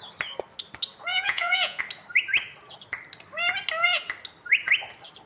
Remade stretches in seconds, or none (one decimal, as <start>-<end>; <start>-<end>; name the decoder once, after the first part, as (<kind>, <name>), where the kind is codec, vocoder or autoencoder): 1.1-1.8 (vocoder, Vocos)